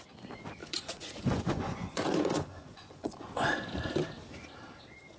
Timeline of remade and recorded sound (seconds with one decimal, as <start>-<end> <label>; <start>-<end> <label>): 0.0-0.6 recorded; 0.6-3.7 remade; 3.7-5.2 recorded